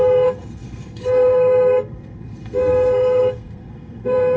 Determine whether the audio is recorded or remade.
remade